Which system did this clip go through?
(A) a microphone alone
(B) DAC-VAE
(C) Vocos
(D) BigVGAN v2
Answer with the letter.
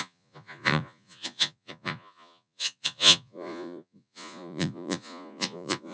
C